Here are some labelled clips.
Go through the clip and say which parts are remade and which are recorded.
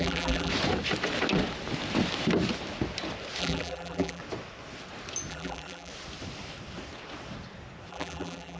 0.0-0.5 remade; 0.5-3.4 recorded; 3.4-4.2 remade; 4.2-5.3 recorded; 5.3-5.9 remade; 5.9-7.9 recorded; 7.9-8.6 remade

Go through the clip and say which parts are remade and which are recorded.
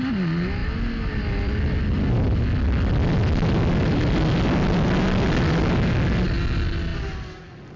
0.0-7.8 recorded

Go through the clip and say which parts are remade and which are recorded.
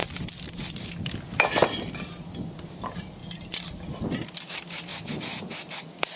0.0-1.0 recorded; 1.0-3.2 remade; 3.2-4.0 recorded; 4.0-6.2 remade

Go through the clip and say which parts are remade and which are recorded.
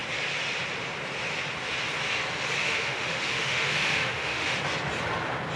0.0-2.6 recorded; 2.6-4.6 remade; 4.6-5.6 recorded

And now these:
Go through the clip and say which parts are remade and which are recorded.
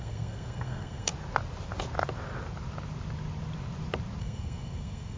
0.0-1.1 remade; 1.1-4.2 recorded; 4.2-5.2 remade